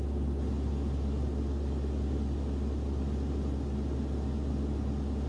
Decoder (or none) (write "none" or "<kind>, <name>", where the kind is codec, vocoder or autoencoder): none